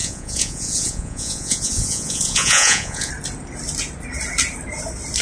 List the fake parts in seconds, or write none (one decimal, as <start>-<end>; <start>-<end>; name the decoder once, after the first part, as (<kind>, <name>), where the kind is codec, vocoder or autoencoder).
0.0-3.1 (vocoder, Vocos)